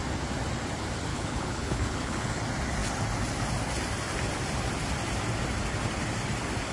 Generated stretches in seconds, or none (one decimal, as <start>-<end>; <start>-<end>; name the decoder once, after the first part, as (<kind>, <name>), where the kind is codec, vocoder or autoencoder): 1.1-2.3 (codec, HILCodec)

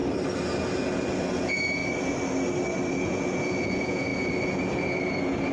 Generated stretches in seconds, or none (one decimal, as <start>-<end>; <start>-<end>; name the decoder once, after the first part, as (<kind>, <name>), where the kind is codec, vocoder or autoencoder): 0.6-1.8 (vocoder, Vocos); 2.9-5.5

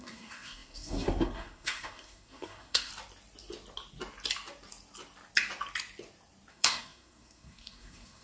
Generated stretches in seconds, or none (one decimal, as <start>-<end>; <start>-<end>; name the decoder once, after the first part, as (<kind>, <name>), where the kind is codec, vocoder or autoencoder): 0.0-2.9 (codec, SNAC); 6.5-8.2

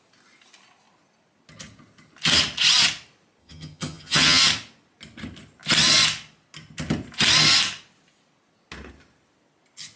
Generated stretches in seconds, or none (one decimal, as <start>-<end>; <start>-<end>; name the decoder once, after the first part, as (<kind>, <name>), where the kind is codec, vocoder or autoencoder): 3.4-4.4 (vocoder, HiFi-GAN)